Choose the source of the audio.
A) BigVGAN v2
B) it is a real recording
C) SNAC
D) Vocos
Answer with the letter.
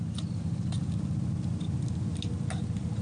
B